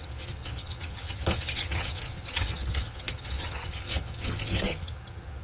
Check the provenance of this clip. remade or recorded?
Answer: remade